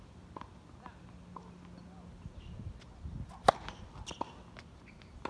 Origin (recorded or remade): recorded